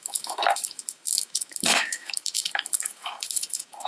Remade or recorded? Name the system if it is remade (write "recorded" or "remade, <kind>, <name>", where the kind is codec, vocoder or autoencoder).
remade, autoencoder, DAC-VAE